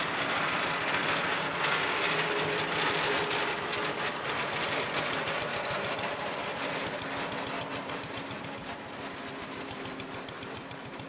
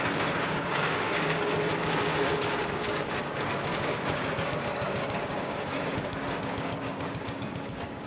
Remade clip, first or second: second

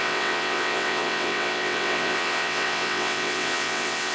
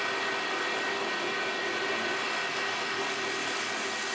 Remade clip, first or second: first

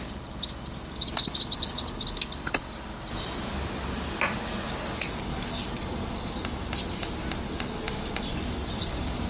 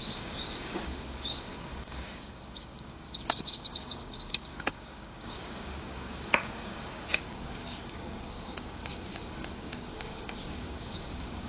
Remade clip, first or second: second